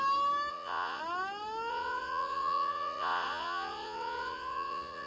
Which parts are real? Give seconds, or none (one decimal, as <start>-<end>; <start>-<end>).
0.0-0.5; 1.0-1.7